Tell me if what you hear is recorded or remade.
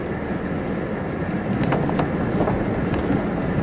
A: recorded